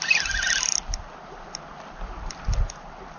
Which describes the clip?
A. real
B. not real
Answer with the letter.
A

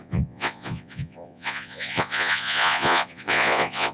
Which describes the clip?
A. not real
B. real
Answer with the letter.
A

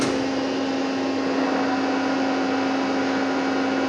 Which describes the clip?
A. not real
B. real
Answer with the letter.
B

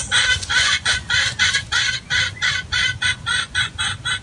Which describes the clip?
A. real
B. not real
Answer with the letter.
B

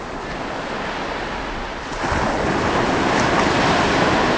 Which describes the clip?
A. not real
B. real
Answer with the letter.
B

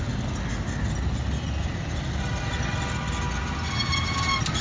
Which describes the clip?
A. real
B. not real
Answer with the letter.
A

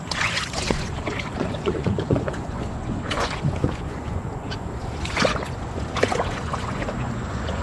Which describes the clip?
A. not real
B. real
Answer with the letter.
A